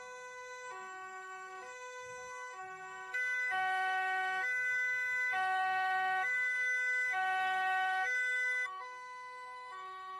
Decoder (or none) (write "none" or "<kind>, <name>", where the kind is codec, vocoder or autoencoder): codec, SNAC